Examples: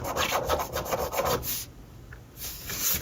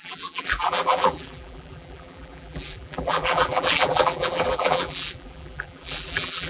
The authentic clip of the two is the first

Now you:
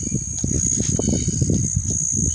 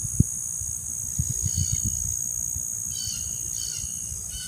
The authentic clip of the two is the second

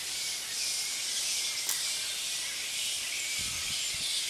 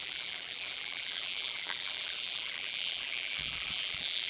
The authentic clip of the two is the first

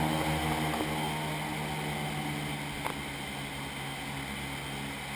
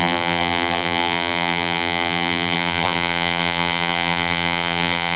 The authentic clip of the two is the first